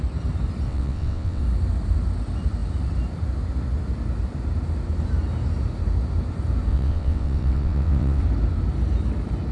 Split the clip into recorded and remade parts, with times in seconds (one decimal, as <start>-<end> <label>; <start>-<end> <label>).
0.0-0.7 recorded; 0.7-1.4 remade; 1.4-6.7 recorded; 6.7-8.2 remade; 8.2-9.5 recorded